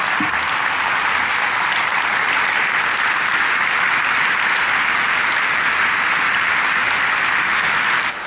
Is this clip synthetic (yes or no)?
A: no